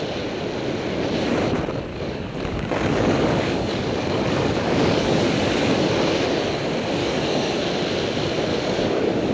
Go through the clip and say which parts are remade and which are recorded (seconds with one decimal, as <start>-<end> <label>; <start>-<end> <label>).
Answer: 0.0-1.9 recorded; 1.9-5.9 remade; 5.9-7.0 recorded; 7.0-7.6 remade; 7.6-8.5 recorded; 8.5-9.3 remade